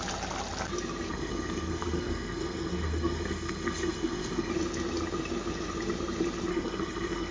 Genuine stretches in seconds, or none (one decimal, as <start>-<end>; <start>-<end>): 0.0-1.1; 4.5-6.5